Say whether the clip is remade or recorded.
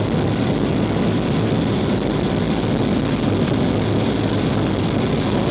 recorded